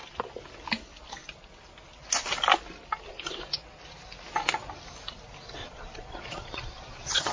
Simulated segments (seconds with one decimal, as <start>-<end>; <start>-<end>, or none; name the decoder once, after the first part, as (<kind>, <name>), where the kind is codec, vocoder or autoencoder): 5.6-7.3 (vocoder, Vocos)